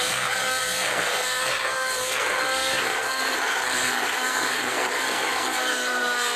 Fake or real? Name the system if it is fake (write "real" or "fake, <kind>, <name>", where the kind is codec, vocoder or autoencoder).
fake, codec, SNAC